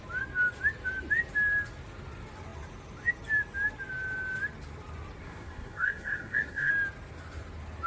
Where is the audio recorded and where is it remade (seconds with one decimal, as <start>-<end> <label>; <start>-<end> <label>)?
0.0-5.2 recorded; 5.2-6.7 remade; 6.7-7.9 recorded